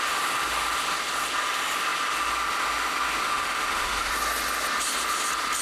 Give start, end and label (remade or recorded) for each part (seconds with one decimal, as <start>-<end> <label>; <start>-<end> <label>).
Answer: 0.0-3.2 recorded; 3.2-4.1 remade; 4.1-5.6 recorded